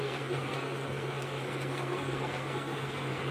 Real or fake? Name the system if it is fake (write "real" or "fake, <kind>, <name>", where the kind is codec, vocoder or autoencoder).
fake, codec, SNAC